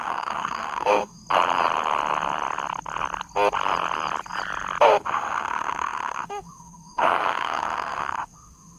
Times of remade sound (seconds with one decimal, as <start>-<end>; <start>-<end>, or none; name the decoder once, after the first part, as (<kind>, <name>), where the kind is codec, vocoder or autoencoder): 0.0-1.2 (autoencoder, DAC-VAE); 4.8-8.8